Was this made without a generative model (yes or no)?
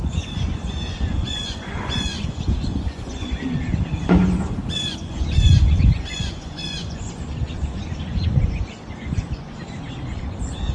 no